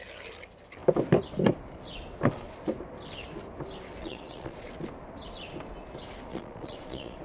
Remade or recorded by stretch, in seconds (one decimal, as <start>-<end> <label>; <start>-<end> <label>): 0.0-4.0 recorded; 4.0-4.7 remade; 4.7-6.3 recorded; 6.3-7.2 remade